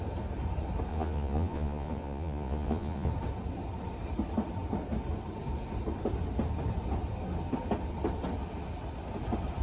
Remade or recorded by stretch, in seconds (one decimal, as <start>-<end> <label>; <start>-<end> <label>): 0.0-0.9 recorded; 0.9-3.1 remade; 3.1-9.6 recorded